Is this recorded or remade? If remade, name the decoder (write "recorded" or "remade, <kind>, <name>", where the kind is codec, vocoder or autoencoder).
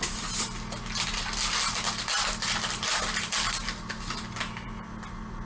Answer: recorded